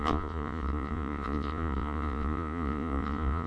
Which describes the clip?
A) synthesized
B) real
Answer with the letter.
A